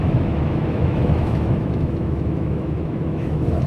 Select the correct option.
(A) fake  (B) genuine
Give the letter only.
A